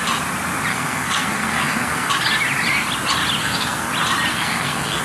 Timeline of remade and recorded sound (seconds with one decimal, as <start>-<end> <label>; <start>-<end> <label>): 0.0-0.7 recorded; 0.7-2.1 remade; 2.1-3.4 recorded; 3.4-3.9 remade; 3.9-4.3 recorded; 4.3-5.0 remade